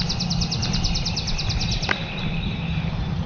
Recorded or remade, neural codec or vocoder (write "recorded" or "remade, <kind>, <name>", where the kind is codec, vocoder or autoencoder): recorded